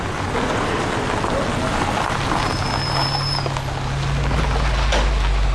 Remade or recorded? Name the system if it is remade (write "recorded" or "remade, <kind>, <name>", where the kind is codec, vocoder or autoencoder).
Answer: recorded